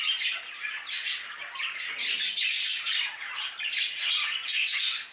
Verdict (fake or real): real